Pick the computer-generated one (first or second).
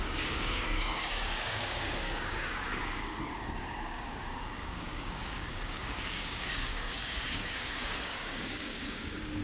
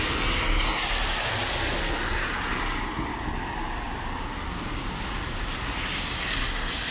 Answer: first